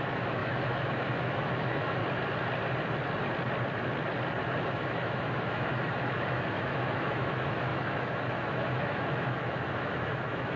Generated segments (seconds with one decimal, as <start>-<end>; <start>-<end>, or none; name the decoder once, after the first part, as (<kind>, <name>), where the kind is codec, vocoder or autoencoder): 0.0-2.0 (autoencoder, DAC-VAE); 4.7-10.6

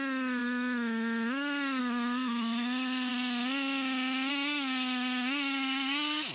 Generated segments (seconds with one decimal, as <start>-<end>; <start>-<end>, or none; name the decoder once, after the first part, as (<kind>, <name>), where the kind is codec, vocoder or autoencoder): 0.0-3.1 (autoencoder, DAC-VAE); 4.3-6.3

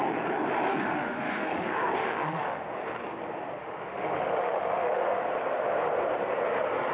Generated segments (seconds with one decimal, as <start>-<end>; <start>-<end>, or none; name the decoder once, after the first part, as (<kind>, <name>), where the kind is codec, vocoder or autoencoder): 0.7-2.6 (autoencoder, DAC-VAE); 3.6-5.2

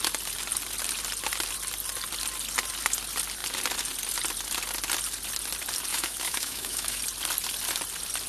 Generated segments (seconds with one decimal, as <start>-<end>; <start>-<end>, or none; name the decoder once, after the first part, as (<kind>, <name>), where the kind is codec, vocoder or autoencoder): 5.9-7.0 (autoencoder, DAC-VAE)